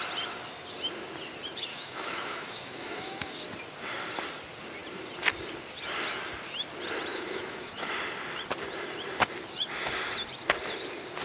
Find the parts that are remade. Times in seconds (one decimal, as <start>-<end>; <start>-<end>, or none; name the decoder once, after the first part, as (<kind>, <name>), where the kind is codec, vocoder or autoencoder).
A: 1.7-3.3 (autoencoder, DAC-VAE); 7.1-7.9